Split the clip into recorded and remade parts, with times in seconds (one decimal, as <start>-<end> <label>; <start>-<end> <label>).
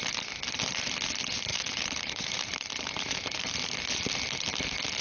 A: 0.0-1.5 recorded; 1.5-3.5 remade; 3.5-5.0 recorded